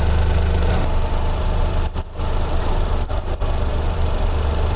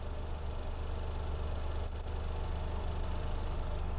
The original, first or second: second